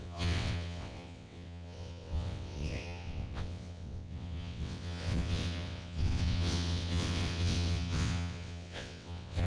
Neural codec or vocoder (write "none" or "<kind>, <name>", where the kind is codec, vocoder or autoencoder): vocoder, WaveNeXt